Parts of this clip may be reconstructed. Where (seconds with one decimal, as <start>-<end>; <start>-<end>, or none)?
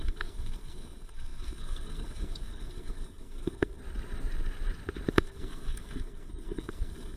0.0-3.8; 5.1-7.2